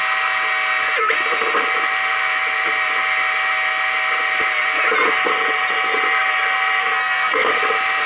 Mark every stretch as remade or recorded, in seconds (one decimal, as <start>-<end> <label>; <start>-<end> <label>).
0.0-6.8 recorded; 6.8-7.6 remade; 7.6-8.1 recorded